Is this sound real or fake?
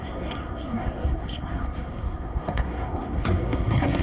fake